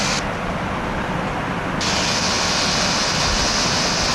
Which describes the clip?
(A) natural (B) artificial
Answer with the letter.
A